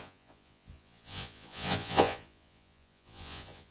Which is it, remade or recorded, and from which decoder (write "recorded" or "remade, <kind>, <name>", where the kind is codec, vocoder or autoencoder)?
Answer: remade, vocoder, Vocos